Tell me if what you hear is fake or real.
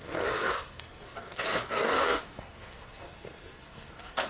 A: fake